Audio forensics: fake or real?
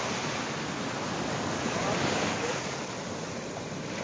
real